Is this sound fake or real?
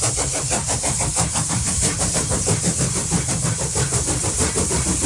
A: fake